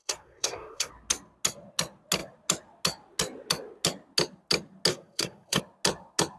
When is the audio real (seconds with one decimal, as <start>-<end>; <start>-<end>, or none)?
0.9-4.9; 5.6-6.4